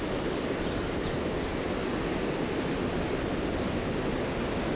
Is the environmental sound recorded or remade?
recorded